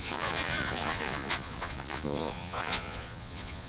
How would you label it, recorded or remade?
remade